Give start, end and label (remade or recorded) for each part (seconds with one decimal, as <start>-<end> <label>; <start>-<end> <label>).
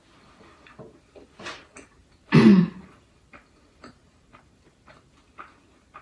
0.0-2.0 recorded; 2.0-5.1 remade; 5.1-6.0 recorded